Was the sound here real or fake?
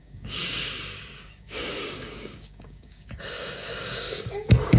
fake